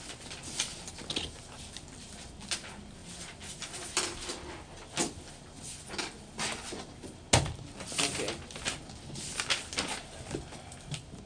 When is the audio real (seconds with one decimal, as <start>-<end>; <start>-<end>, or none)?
0.0-11.3